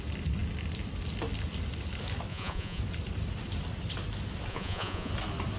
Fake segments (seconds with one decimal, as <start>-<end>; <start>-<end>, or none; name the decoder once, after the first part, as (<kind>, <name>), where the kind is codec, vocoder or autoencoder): 2.3-2.8 (vocoder, Vocos); 4.5-5.1